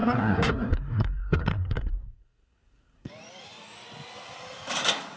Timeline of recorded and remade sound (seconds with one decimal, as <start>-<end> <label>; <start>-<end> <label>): 0.0-3.1 remade; 3.1-5.2 recorded